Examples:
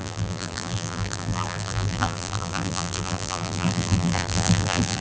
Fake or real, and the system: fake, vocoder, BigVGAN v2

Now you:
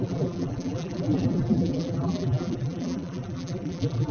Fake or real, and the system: fake, vocoder, BigVGAN v2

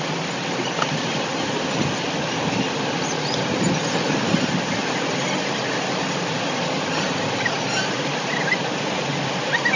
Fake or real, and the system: real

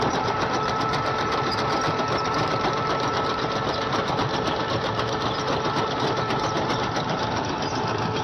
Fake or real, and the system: fake, vocoder, BigVGAN v2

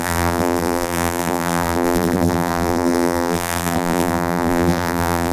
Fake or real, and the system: fake, vocoder, BigVGAN v2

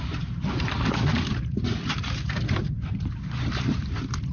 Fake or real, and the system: fake, vocoder, BigVGAN v2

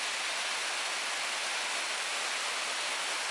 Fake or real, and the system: real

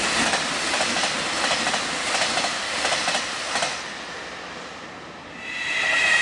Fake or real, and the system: real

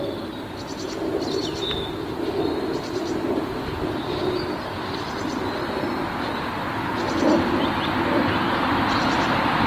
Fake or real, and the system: real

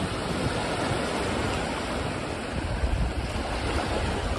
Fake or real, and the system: real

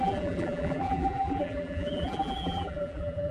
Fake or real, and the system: fake, vocoder, BigVGAN v2